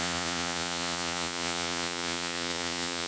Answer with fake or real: fake